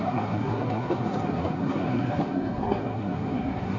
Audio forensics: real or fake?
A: fake